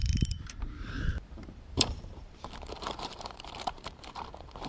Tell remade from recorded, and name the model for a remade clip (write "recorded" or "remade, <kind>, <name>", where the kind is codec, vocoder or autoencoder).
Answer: remade, vocoder, BigVGAN v2